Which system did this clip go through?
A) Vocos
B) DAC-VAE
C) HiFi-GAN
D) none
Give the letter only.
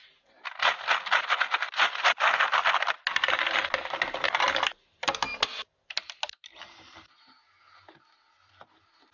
D